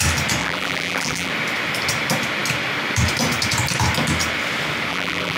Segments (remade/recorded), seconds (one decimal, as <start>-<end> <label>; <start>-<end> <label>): 0.0-0.4 recorded; 0.4-1.3 remade; 1.3-4.9 recorded; 4.9-5.4 remade